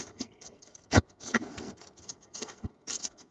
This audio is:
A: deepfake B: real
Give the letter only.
A